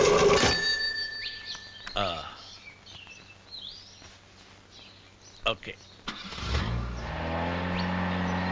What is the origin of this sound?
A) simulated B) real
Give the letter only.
B